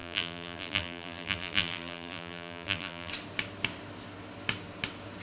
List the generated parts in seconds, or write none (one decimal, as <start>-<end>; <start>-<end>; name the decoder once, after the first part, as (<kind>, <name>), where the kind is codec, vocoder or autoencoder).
0.0-3.1 (vocoder, BigVGAN v2)